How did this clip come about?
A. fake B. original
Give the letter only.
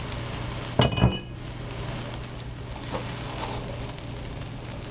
B